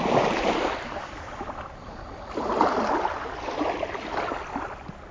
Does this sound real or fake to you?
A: fake